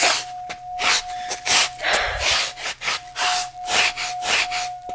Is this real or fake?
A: real